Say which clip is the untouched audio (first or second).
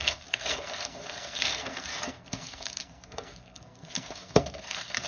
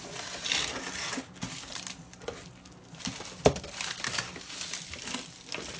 second